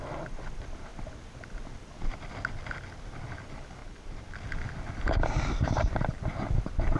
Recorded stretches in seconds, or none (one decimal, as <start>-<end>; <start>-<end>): 0.0-3.8; 4.4-7.0